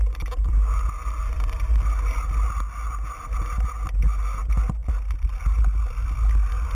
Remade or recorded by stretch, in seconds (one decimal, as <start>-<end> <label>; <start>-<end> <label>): 0.0-6.7 recorded